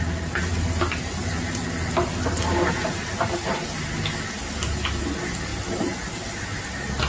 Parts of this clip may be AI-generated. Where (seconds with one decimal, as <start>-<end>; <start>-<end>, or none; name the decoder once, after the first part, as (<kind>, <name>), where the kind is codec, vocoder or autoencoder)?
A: none